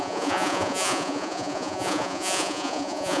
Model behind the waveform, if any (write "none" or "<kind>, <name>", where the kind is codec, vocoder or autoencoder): vocoder, Vocos